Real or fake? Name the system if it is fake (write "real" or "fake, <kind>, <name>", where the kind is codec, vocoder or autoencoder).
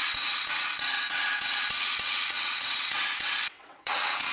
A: fake, vocoder, WaveNeXt